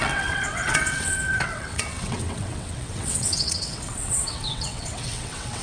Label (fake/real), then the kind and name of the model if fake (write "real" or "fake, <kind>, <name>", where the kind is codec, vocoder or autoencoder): fake, vocoder, WaveNeXt